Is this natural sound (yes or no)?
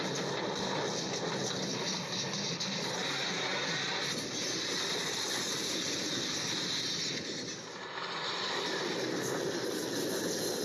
yes